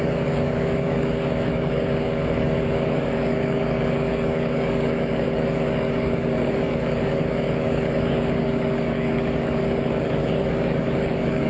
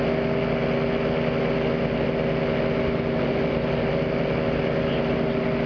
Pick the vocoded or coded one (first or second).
first